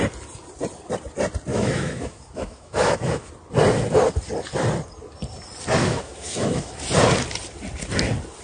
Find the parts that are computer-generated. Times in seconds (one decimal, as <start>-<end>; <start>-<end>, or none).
1.5-3.3; 5.8-6.8